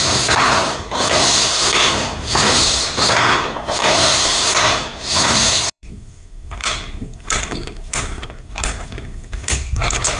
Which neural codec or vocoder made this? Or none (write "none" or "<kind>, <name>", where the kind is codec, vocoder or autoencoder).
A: codec, SNAC